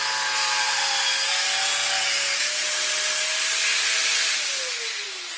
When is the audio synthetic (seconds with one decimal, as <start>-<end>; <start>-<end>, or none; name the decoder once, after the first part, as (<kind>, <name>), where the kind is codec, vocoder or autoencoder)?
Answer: none